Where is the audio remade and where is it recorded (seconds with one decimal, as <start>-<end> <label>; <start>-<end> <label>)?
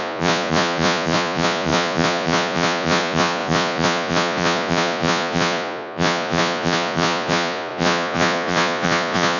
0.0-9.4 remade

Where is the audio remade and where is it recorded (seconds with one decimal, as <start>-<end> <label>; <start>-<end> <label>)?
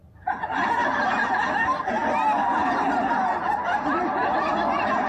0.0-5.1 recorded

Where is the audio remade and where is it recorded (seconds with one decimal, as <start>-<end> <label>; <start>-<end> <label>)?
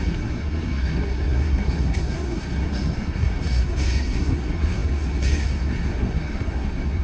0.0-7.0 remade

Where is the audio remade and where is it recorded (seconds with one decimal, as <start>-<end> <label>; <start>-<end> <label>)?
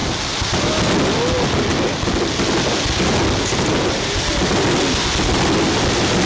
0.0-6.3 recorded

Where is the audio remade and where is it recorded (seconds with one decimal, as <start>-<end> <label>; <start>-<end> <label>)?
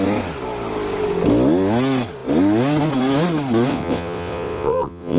0.0-3.7 recorded; 3.7-5.2 remade